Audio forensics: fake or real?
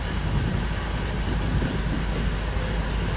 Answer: real